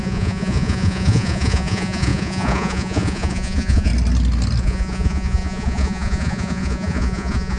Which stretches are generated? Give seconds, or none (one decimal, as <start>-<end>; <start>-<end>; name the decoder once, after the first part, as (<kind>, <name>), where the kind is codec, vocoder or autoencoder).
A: 0.0-3.9 (vocoder, Vocos); 4.6-7.6